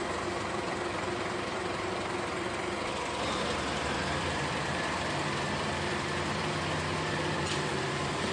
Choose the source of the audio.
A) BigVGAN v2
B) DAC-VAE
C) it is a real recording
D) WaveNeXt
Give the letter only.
A